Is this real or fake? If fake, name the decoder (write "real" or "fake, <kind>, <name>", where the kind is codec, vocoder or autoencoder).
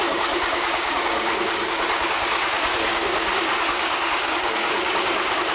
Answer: fake, codec, DAC